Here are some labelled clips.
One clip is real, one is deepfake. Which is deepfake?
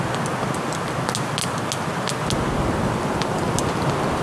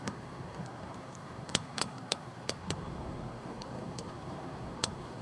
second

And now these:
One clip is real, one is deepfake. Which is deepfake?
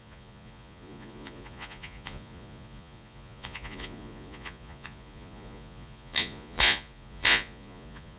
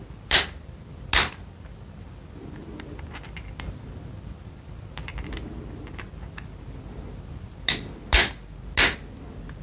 first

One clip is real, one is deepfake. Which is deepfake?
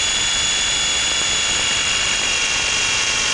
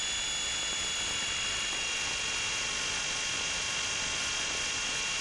first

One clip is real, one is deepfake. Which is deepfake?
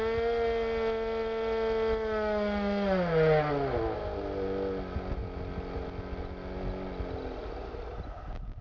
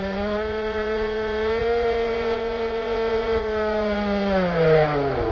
second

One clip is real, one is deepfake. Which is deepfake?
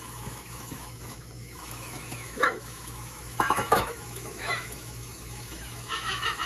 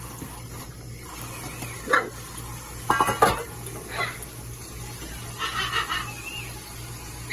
first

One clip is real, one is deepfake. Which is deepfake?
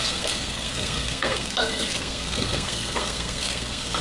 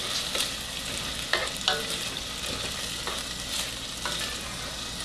first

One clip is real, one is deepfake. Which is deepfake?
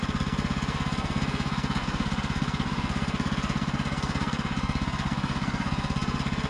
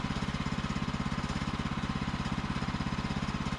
first